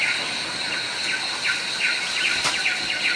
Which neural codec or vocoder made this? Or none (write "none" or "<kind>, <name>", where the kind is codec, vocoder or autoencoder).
none